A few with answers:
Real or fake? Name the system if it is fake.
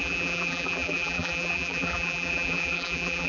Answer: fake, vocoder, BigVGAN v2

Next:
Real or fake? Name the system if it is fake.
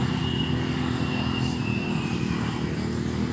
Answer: real